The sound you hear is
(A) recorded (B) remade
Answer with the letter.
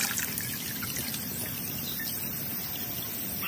A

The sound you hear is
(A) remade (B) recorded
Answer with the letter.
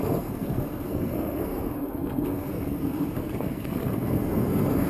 A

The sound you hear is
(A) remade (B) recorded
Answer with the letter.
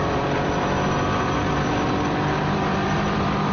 A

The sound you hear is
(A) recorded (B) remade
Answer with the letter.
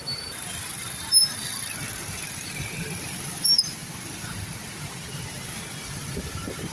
A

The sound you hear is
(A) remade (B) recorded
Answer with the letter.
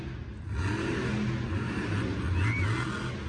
B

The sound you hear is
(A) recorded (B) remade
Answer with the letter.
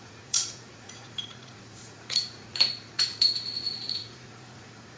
B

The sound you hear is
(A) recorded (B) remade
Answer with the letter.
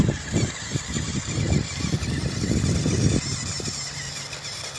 A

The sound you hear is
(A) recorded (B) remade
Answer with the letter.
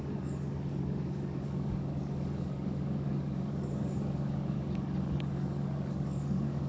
B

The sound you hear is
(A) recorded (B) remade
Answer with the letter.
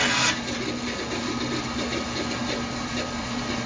A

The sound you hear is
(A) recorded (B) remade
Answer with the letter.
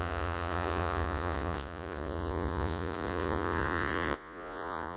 B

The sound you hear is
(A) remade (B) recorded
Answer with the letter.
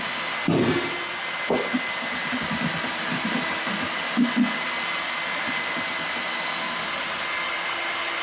B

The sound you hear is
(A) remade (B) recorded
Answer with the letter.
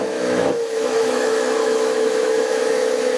A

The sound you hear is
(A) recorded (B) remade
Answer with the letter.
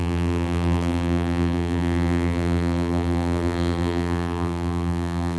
B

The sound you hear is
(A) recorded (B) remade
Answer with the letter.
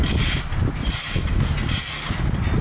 A